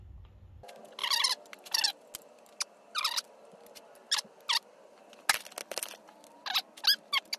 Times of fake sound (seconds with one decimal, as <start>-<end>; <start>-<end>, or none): none